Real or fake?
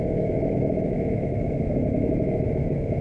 fake